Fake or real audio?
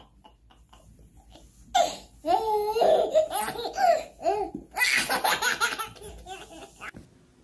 real